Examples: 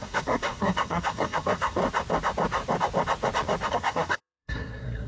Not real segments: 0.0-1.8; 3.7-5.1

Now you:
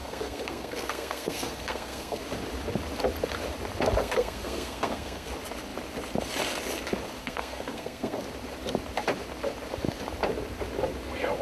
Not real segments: 0.0-2.2; 4.0-5.3; 7.2-8.2